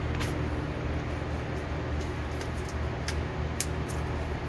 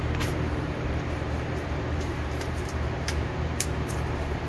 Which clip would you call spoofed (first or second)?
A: second